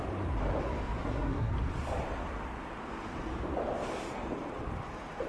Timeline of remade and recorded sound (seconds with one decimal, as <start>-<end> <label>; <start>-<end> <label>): 0.0-1.0 recorded; 1.0-1.5 remade; 1.5-5.3 recorded